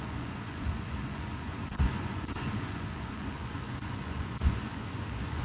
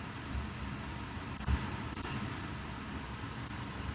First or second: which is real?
second